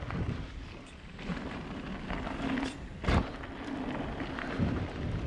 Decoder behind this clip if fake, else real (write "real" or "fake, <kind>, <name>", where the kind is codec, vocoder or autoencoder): real